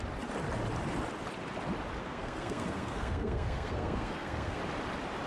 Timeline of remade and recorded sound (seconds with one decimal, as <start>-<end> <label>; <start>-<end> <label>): 0.0-2.0 recorded; 2.0-4.6 remade; 4.6-5.3 recorded

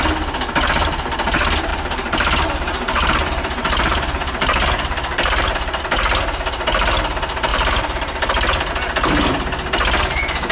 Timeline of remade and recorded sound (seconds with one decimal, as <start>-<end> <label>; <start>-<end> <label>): 0.0-1.7 recorded; 1.7-5.8 remade; 5.8-7.5 recorded; 7.5-8.7 remade; 8.7-10.5 recorded

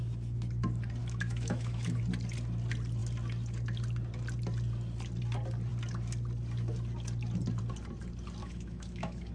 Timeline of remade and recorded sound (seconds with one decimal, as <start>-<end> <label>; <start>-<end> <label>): 0.0-1.0 recorded; 1.0-2.0 remade; 2.0-8.4 recorded; 8.4-9.3 remade

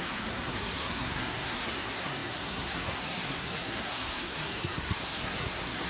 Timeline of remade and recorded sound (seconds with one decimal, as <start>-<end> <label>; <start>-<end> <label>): 0.0-5.9 remade

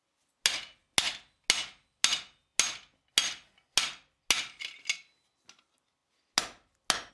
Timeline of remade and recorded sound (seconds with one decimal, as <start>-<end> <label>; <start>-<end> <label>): 0.0-7.1 recorded

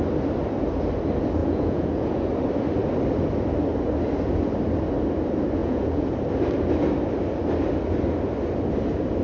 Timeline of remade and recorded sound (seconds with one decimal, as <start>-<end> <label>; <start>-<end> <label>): 0.0-1.4 recorded; 1.4-2.3 remade; 2.3-5.6 recorded; 5.6-6.1 remade; 6.1-9.2 recorded